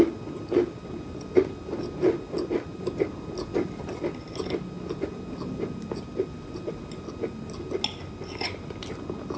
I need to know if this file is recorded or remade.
recorded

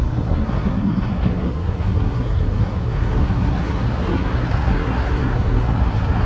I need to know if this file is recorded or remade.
remade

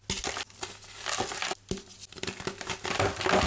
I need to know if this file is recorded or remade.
recorded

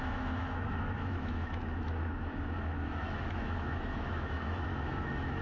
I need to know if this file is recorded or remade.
remade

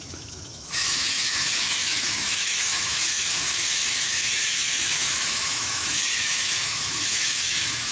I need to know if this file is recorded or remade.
remade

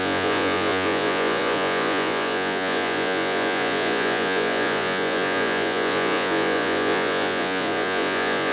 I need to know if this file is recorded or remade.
remade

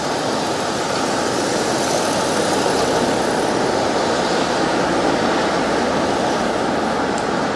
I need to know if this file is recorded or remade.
recorded